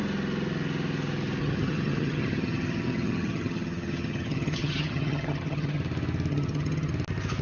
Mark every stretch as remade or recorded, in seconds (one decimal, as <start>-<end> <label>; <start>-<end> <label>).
0.0-1.4 recorded; 1.4-5.8 remade; 5.8-6.3 recorded; 6.3-6.9 remade; 6.9-7.4 recorded